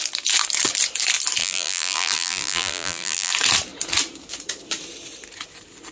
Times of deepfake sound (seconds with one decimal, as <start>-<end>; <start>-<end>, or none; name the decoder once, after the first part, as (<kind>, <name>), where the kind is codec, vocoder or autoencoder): 1.4-3.3 (vocoder, BigVGAN v2)

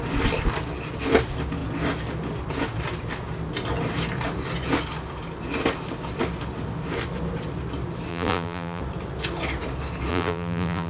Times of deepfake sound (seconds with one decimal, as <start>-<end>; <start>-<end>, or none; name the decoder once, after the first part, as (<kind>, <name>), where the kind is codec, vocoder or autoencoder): 8.1-8.8 (vocoder, BigVGAN v2); 10.1-10.9

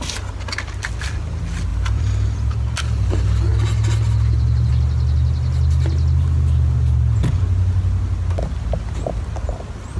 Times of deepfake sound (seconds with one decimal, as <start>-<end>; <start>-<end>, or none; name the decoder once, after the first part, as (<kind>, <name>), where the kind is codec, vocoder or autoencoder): 1.7-2.5 (vocoder, BigVGAN v2)

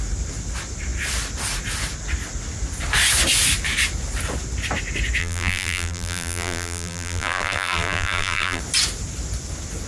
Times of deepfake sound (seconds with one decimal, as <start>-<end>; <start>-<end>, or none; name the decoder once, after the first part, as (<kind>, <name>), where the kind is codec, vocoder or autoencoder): 5.2-8.6 (vocoder, BigVGAN v2)